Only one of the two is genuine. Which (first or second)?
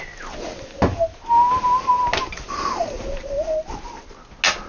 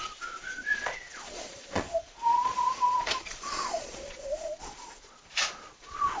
first